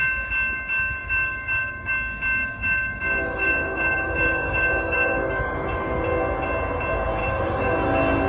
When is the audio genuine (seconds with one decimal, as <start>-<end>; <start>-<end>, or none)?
0.0-1.0; 1.9-2.4; 6.0-7.2; 7.7-8.3